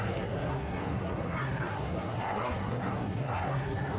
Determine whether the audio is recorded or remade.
remade